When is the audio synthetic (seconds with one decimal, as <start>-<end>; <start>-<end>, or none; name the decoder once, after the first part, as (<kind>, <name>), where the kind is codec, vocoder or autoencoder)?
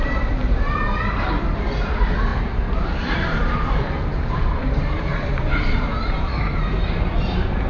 0.0-7.7 (vocoder, BigVGAN v2)